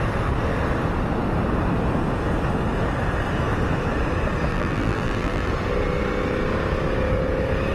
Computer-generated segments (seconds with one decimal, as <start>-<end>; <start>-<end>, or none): 4.5-5.5